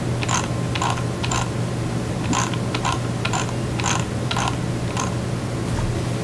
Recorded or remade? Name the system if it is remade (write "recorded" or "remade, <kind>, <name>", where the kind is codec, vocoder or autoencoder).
recorded